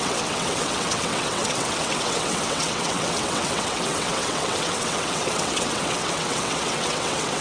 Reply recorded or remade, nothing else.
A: remade